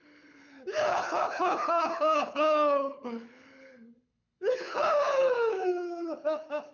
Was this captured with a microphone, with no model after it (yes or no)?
no